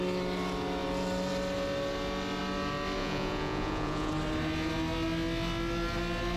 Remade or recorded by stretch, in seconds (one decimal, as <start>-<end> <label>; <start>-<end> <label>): 0.0-3.0 recorded; 3.0-4.1 remade; 4.1-6.4 recorded